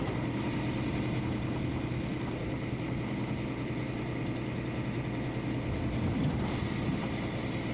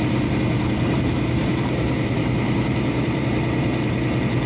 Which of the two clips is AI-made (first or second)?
second